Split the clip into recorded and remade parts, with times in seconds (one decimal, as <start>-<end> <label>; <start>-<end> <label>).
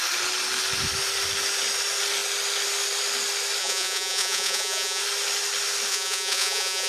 0.0-3.6 recorded; 3.6-5.0 remade; 5.0-5.9 recorded; 5.9-6.9 remade